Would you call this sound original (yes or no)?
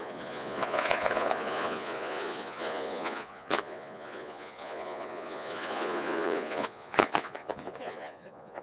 no